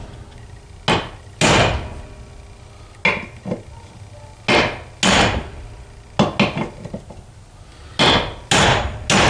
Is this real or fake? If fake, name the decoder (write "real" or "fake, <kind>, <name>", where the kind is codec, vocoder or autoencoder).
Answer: real